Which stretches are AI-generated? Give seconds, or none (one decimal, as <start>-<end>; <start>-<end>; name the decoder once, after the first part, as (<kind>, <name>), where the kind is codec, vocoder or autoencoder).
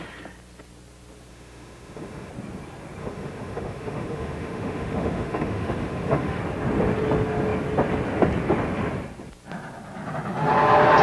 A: 1.3-2.3 (autoencoder, DAC-VAE); 3.0-6.4